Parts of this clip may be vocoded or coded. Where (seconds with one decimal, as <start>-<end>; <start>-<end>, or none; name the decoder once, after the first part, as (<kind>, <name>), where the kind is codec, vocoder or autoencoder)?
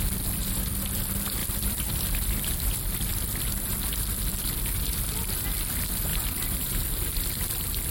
1.4-3.1 (vocoder, BigVGAN v2); 3.7-4.4; 6.1-6.7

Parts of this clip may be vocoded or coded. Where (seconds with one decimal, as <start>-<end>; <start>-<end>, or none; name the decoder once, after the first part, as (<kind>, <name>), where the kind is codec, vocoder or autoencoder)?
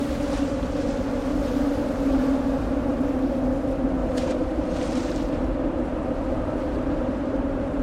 0.0-0.8 (vocoder, BigVGAN v2); 1.3-2.2; 4.0-7.8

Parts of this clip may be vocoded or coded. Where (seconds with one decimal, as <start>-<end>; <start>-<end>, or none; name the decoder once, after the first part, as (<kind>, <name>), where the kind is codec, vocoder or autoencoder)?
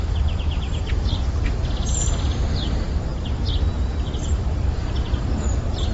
0.0-5.9 (vocoder, BigVGAN v2)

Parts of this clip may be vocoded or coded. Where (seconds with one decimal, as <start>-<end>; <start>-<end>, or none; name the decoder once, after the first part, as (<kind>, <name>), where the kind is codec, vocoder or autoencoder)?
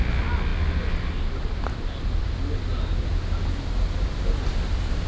none